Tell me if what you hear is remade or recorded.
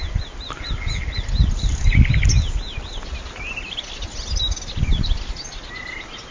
recorded